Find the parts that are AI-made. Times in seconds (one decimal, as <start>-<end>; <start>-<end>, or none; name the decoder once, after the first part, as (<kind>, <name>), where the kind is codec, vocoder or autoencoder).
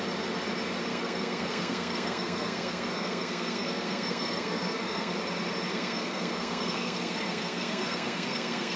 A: 0.9-5.1 (codec, SNAC); 5.7-8.8